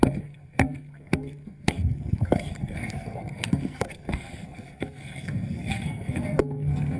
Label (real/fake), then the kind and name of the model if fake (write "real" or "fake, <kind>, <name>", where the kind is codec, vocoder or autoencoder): fake, codec, SNAC